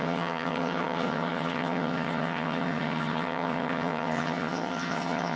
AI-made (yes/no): yes